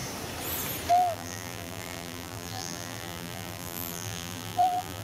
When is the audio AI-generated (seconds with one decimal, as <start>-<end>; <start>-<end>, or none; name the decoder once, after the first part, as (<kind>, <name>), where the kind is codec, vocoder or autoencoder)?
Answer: 0.9-5.0 (vocoder, BigVGAN v2)